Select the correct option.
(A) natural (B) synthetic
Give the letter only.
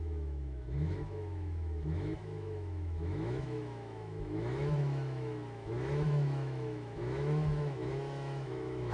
B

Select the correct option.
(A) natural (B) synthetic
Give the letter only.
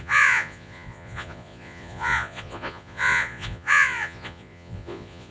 B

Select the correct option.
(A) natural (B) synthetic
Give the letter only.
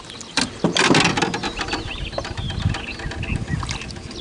A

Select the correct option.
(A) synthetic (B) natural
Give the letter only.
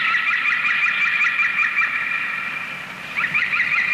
A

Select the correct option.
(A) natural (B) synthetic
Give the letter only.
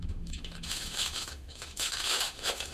B